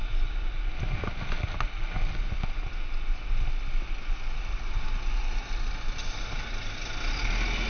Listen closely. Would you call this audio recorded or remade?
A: recorded